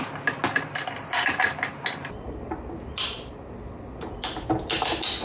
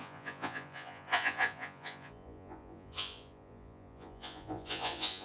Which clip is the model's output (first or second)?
second